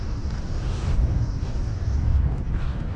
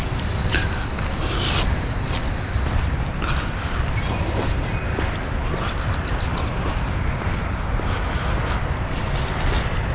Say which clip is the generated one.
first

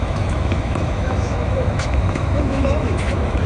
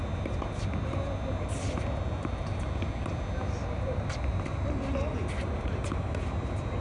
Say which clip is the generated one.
first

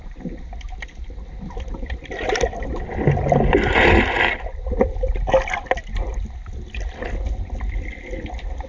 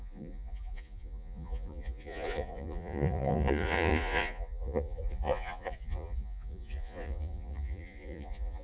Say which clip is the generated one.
second